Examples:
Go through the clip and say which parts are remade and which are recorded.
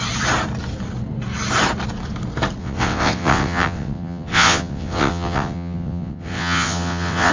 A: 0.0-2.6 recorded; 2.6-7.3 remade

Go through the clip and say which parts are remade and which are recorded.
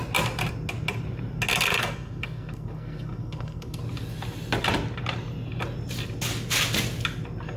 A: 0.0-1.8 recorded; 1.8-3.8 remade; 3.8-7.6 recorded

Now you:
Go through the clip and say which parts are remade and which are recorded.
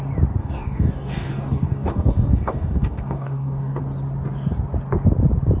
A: 0.0-0.4 recorded; 0.4-3.8 remade; 3.8-5.6 recorded